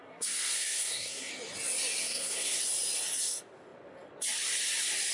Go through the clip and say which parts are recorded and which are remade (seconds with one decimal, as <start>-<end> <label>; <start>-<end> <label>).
0.0-1.3 remade; 1.3-2.0 recorded; 2.0-2.6 remade; 2.6-5.1 recorded